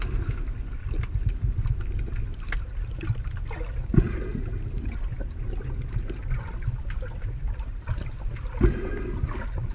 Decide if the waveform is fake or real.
real